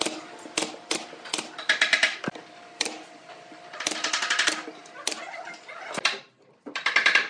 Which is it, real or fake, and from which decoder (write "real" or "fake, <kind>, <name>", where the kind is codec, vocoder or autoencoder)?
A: real